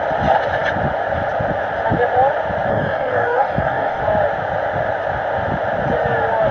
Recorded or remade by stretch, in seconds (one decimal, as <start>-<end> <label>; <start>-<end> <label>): 0.0-2.7 recorded; 2.7-4.0 remade; 4.0-6.5 recorded